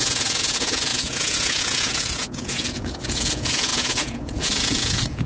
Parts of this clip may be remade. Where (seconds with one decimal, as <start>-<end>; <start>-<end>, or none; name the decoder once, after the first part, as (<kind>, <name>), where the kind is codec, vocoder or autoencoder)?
0.0-5.3 (vocoder, Vocos)

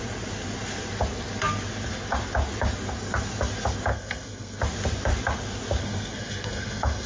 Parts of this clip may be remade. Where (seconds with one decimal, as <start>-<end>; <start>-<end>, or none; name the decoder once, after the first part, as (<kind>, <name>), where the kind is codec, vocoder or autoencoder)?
3.9-4.6 (codec, SNAC); 5.8-7.1

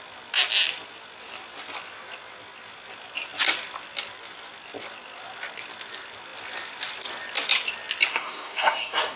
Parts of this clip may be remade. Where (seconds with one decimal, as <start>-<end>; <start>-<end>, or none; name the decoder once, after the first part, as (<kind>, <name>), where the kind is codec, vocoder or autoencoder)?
8.1-9.2 (codec, SNAC)

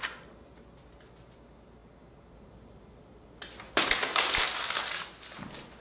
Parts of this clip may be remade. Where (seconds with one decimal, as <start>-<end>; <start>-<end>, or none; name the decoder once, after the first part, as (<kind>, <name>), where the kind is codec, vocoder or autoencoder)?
none